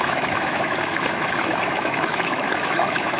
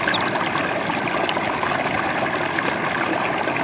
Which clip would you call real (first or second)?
second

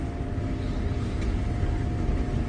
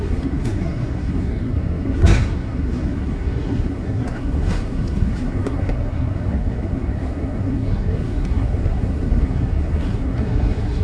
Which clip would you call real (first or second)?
first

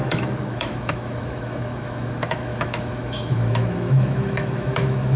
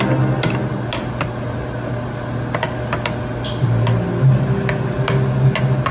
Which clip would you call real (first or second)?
second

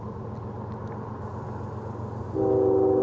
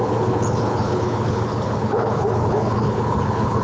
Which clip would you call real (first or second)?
first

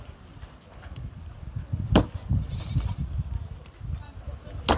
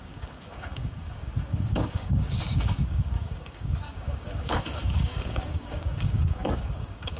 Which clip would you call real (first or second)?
first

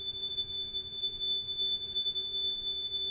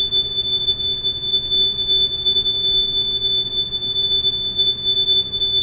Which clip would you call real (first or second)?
second